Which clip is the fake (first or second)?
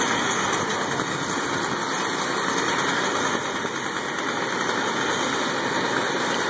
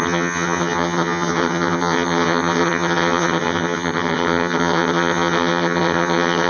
second